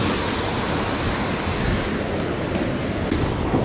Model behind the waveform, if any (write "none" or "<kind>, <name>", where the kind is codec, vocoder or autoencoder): none